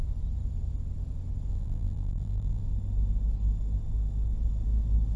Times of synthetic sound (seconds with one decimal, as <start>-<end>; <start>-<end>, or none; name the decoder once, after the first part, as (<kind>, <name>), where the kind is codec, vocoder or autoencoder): 1.5-2.6 (vocoder, BigVGAN v2)